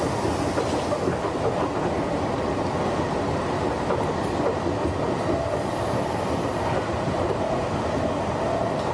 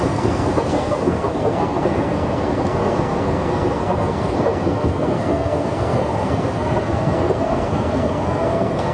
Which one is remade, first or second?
second